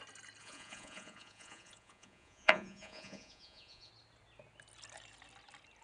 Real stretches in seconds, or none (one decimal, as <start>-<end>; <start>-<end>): 0.0-0.4; 3.9-5.8